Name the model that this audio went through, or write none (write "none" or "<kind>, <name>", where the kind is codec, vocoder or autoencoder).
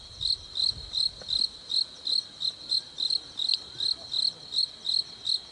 none